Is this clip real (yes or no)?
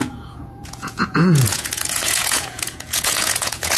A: no